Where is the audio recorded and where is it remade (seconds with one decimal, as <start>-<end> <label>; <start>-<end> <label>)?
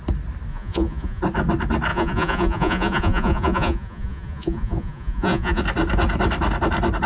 0.0-0.5 recorded; 0.5-1.2 remade; 1.2-1.9 recorded; 1.9-5.6 remade; 5.6-7.1 recorded